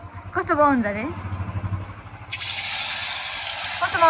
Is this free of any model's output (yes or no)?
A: yes